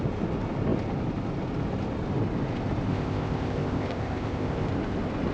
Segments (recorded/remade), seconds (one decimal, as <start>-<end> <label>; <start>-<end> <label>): 0.0-2.9 recorded; 2.9-4.7 remade; 4.7-5.3 recorded